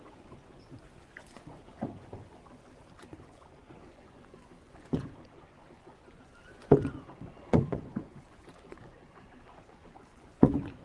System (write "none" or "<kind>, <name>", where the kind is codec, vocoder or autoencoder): vocoder, Vocos